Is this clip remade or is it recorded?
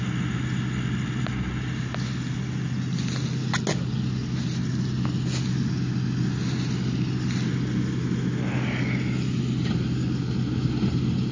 recorded